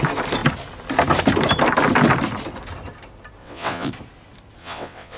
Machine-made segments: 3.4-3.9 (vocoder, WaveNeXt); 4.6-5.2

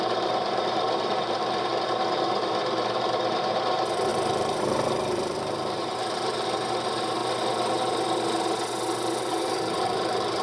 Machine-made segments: 0.0-7.2 (vocoder, BigVGAN v2); 9.2-10.4